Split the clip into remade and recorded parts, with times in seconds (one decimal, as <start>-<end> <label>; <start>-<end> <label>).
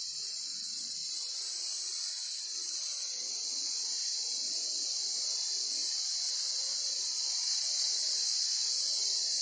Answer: 0.0-0.8 remade; 0.8-9.4 recorded